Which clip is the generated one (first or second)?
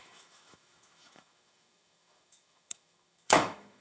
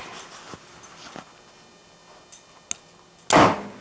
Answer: first